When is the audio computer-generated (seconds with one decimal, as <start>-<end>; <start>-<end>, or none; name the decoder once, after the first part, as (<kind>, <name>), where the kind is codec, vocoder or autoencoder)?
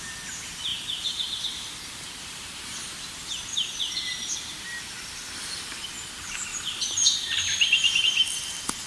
0.7-5.7 (vocoder, BigVGAN v2); 6.5-8.0